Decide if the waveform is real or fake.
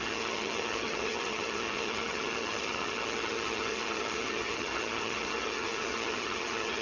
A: fake